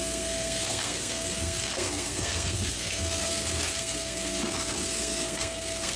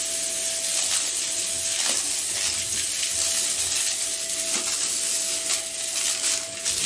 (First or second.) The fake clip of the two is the first